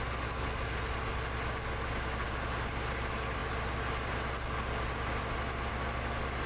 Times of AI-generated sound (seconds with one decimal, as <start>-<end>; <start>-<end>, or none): none